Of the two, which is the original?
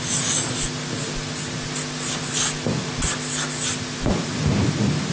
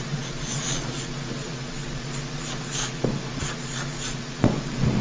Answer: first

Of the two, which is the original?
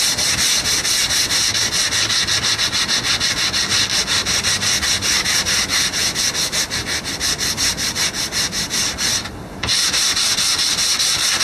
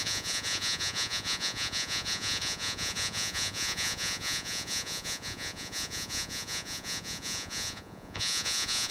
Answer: first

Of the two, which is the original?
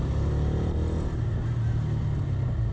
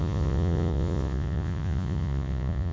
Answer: first